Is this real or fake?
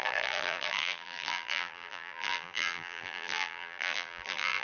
fake